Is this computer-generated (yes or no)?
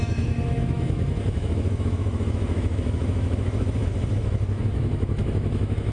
yes